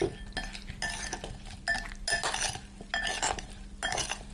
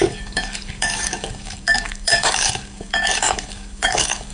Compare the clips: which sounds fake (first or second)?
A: second